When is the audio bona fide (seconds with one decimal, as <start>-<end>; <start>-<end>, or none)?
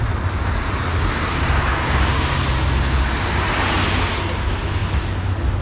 0.0-0.9; 2.3-5.6